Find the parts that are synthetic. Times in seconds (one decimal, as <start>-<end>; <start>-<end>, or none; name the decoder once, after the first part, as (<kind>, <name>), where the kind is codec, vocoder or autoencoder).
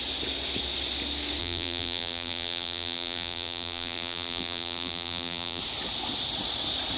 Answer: 1.4-5.6 (vocoder, BigVGAN v2)